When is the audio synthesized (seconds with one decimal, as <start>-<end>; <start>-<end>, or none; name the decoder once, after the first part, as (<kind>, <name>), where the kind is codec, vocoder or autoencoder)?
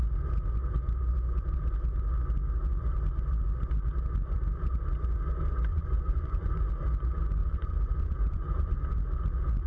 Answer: 5.7-6.7 (vocoder, Vocos); 7.4-9.0